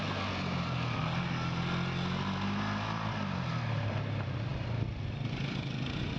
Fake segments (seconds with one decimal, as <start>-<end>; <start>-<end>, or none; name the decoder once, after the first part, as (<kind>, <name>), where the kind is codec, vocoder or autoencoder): none